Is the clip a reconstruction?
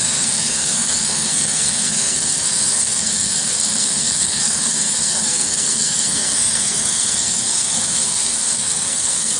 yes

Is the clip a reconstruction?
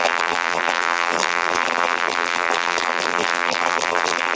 yes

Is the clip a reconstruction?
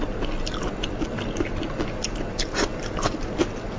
no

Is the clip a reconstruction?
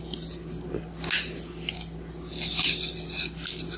no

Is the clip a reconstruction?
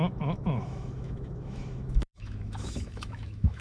yes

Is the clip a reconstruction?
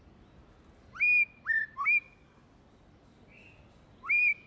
no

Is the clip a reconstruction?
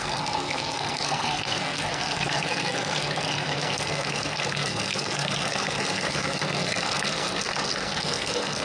yes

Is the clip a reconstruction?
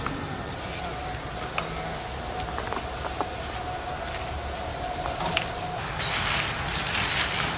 no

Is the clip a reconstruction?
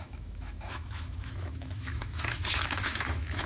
yes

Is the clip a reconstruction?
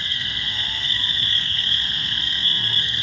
yes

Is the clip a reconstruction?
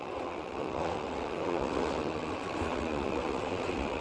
yes